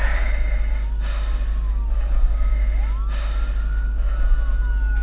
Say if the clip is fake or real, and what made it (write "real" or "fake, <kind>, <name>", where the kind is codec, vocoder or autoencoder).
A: real